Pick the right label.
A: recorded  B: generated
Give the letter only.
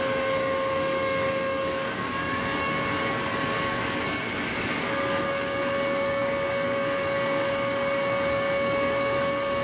B